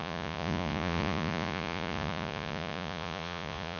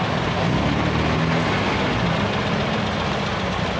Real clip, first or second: second